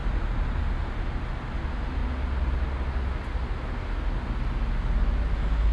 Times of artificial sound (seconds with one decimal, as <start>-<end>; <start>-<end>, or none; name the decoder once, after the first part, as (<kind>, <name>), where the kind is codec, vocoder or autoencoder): none